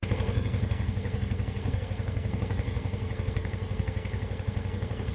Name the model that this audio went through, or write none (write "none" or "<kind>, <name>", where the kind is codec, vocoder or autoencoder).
codec, SNAC